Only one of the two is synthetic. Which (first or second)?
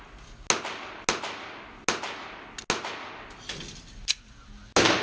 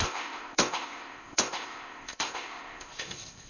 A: second